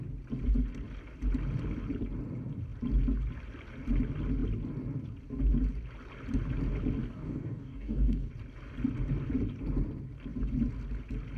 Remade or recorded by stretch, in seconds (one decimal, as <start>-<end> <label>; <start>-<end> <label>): 0.0-7.0 recorded; 7.0-8.3 remade; 8.3-11.4 recorded

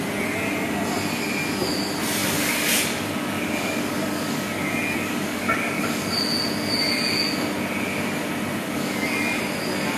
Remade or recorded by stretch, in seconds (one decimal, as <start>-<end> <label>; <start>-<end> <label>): 0.0-2.2 recorded; 2.2-6.1 remade; 6.1-8.6 recorded; 8.6-9.4 remade; 9.4-10.0 recorded

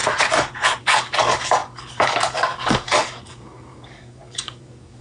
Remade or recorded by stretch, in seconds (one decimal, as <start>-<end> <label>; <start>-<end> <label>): 0.0-0.8 recorded; 0.8-5.0 remade

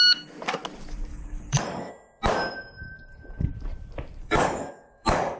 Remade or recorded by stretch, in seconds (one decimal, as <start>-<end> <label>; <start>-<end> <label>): 0.0-1.1 recorded; 1.1-1.9 remade; 1.9-4.2 recorded; 4.2-5.4 remade